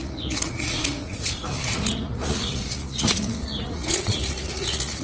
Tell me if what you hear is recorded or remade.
remade